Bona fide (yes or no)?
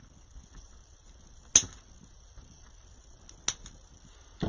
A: yes